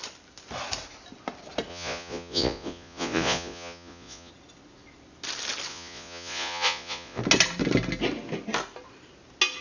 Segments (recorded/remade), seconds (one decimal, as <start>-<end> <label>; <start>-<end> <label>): 0.0-1.7 recorded; 1.7-4.3 remade; 4.3-5.7 recorded; 5.7-7.2 remade; 7.2-9.6 recorded